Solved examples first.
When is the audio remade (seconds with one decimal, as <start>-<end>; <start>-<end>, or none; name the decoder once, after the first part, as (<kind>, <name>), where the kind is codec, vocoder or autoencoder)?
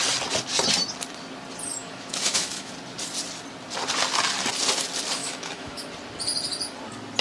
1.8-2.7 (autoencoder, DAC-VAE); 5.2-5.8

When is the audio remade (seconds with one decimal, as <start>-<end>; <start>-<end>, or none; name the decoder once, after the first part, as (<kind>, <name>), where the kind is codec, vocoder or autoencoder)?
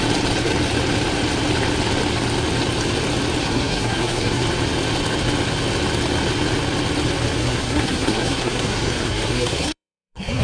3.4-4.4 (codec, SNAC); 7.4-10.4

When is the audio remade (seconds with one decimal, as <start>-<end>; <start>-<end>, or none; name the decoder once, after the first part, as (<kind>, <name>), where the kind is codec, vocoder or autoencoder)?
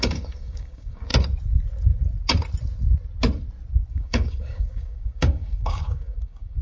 0.0-1.1 (codec, DAC); 3.9-6.6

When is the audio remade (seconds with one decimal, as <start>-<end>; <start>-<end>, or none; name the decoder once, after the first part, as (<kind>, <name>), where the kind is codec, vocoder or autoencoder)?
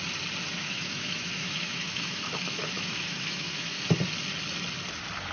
0.6-3.8 (autoencoder, DAC-VAE)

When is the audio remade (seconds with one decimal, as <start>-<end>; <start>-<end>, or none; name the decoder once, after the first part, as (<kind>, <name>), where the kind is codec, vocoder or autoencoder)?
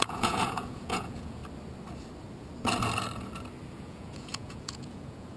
0.0-1.4 (vocoder, Vocos); 3.7-5.4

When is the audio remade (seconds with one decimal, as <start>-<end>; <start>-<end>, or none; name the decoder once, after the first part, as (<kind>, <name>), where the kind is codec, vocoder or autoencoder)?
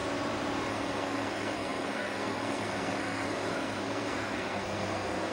0.7-5.3 (codec, SNAC)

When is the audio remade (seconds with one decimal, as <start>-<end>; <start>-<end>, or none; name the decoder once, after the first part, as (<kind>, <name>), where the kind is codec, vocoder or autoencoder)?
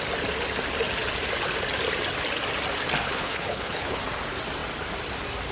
3.0-4.0 (codec, HILCodec)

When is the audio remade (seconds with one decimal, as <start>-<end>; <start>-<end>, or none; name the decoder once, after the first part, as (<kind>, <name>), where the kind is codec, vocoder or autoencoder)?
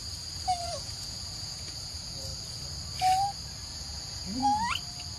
0.6-2.3 (vocoder, Vocos); 3.7-4.4